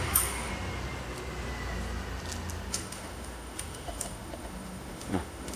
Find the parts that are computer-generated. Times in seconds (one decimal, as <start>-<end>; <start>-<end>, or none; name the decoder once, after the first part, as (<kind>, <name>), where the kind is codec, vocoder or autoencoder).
0.0-0.5 (autoencoder, DAC-VAE); 2.7-5.6